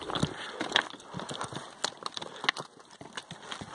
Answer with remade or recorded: recorded